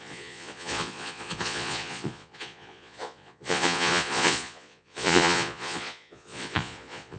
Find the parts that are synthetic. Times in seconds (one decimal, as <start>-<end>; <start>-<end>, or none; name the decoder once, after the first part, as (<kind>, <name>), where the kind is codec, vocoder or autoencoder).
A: 0.0-7.2 (vocoder, Vocos)